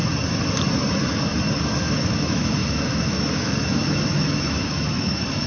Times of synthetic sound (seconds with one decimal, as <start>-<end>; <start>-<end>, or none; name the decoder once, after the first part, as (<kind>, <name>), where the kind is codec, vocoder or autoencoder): 1.7-5.5 (autoencoder, DAC-VAE)